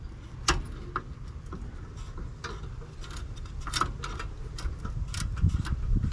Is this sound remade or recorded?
recorded